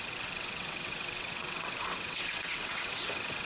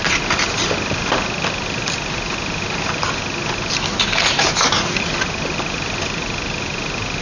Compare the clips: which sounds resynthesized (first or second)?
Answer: first